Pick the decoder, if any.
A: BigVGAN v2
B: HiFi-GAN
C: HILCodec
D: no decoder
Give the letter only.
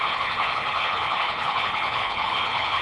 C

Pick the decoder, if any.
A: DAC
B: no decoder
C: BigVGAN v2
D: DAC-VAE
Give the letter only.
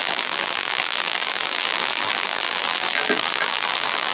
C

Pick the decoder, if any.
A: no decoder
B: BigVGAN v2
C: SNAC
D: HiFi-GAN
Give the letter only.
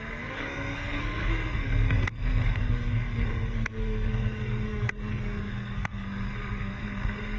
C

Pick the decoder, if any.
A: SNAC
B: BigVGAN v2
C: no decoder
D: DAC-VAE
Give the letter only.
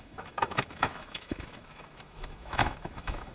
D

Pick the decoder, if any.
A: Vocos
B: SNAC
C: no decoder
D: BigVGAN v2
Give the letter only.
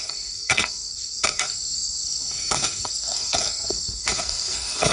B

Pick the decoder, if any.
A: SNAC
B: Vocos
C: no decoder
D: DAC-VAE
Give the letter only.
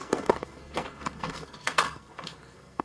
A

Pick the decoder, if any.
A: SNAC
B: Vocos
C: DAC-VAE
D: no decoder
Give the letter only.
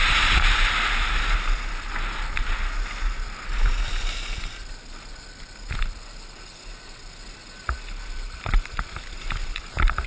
D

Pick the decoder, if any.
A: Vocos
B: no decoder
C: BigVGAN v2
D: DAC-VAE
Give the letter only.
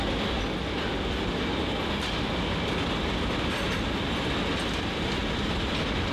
B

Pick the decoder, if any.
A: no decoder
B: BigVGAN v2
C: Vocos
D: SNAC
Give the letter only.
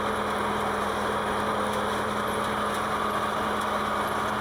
A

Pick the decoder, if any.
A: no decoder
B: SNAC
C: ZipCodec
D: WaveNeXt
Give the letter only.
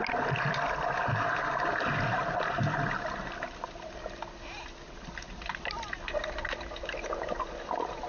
A